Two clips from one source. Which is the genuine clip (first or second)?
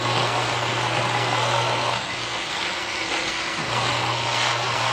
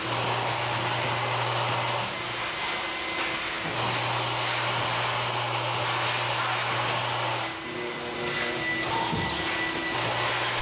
second